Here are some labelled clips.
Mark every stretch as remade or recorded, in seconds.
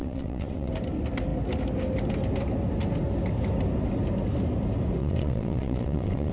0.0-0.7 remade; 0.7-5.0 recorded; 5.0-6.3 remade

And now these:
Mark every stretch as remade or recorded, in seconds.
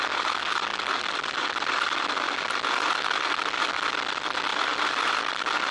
0.0-4.5 recorded; 4.5-5.3 remade; 5.3-5.7 recorded